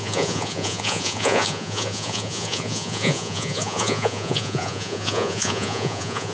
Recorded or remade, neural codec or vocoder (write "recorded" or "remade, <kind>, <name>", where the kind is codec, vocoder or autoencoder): remade, vocoder, Vocos